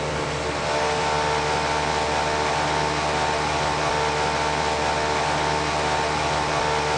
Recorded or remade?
recorded